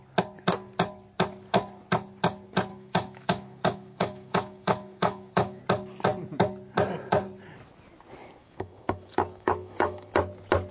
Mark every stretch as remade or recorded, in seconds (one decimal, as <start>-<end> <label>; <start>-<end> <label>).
0.0-2.7 recorded; 2.7-5.6 remade; 5.6-8.4 recorded; 8.4-10.1 remade; 10.1-10.7 recorded